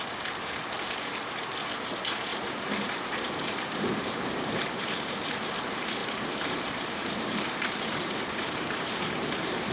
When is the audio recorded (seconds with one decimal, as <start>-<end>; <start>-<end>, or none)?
0.0-2.3; 5.1-6.0